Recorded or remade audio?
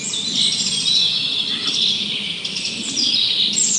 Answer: recorded